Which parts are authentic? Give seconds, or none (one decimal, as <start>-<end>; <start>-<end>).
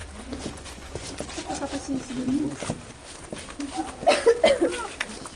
1.5-5.4